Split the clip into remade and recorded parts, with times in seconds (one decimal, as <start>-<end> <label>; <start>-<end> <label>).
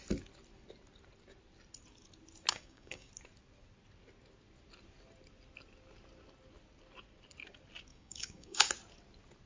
0.0-2.5 recorded; 2.5-3.1 remade; 3.1-7.9 recorded; 7.9-8.7 remade; 8.7-9.5 recorded